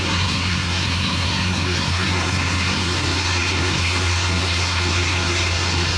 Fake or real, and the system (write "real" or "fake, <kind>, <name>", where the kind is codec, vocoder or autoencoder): fake, codec, SNAC